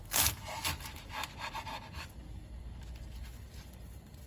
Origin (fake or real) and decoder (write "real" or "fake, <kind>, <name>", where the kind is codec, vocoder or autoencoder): real